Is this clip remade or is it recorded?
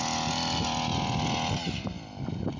recorded